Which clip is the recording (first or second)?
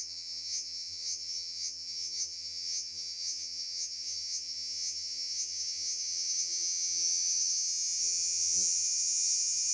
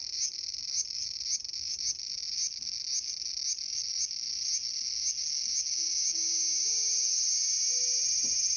second